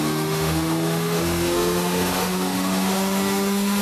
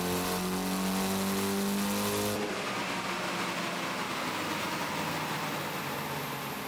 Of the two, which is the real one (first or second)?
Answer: second